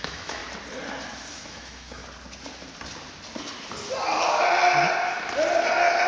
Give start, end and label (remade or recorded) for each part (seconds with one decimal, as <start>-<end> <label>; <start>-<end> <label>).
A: 0.0-0.4 remade; 0.4-1.3 recorded; 1.3-2.0 remade; 2.0-6.1 recorded